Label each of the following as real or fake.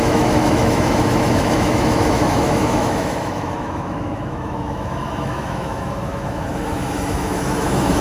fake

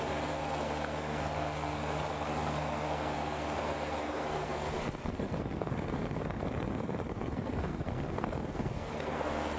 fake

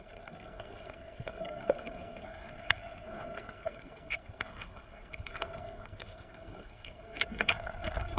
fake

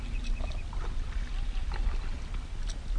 real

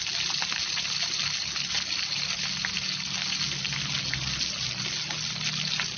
real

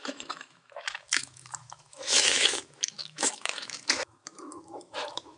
fake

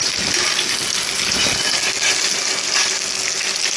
real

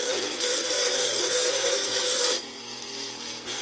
fake